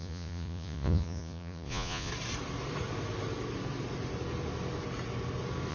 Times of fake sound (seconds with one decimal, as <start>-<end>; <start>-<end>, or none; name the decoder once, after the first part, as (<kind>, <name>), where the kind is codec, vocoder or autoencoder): 0.0-2.1 (vocoder, Vocos)